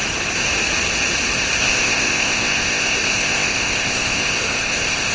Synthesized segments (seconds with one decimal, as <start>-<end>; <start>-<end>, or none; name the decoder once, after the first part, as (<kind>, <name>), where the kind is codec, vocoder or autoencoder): 1.6-5.1 (codec, ZipCodec)